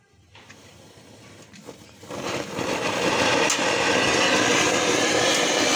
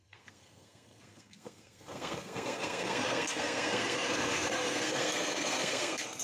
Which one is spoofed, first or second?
second